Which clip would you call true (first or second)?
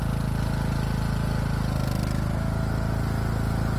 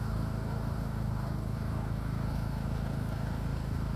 first